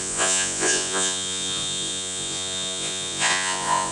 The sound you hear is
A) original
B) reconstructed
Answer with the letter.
B